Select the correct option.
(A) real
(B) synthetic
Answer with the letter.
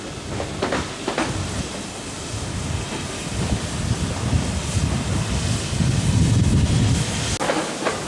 A